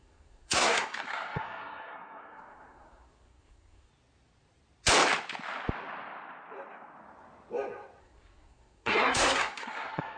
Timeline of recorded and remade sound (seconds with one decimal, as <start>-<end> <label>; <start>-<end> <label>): 0.0-3.9 remade; 3.9-8.0 recorded; 8.0-10.2 remade